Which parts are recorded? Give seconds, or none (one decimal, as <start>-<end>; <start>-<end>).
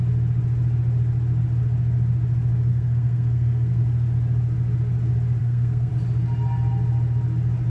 0.0-2.7; 3.8-5.4; 5.9-7.7